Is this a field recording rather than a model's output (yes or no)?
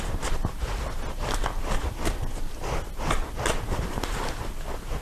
yes